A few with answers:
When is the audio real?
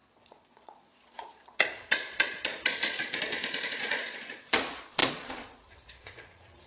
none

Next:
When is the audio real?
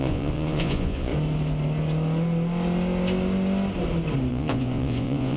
1.1-4.3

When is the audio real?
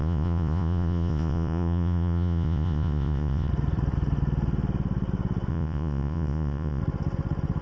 3.5-5.5; 6.8-7.6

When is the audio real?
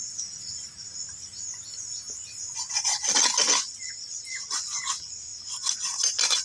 0.0-6.4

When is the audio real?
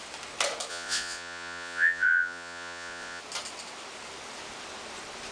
0.0-0.7; 3.2-5.3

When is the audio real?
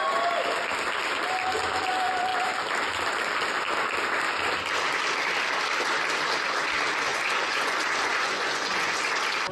0.0-7.1; 9.1-9.5